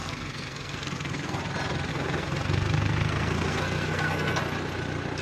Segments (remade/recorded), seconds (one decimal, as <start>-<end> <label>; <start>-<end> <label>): 0.0-1.4 remade; 1.4-1.9 recorded; 1.9-4.4 remade; 4.4-5.2 recorded